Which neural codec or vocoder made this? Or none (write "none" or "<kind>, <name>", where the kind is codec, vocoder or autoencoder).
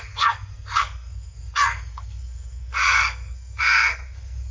codec, SNAC